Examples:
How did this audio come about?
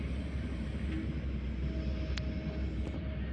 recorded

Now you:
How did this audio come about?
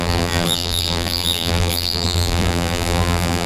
remade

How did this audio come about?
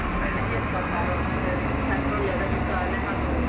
recorded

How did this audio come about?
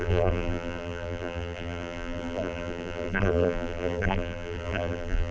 remade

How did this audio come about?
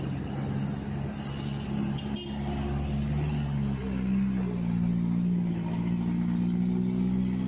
recorded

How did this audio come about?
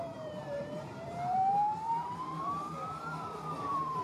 remade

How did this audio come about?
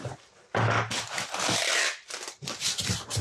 recorded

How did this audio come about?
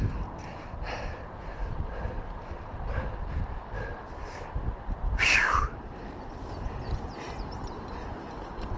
recorded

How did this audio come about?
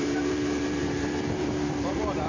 remade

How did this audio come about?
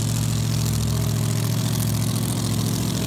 recorded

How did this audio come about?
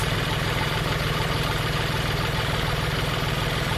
remade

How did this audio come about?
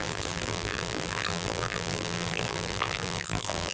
remade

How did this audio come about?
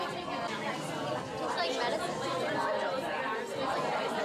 recorded